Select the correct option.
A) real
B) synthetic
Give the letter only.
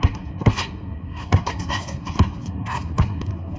B